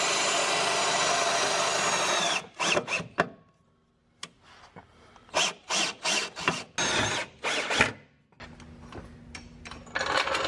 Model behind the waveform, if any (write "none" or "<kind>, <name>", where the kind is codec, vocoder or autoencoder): none